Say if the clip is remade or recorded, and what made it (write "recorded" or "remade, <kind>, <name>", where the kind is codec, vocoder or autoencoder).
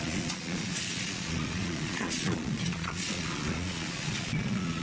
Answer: remade, vocoder, Vocos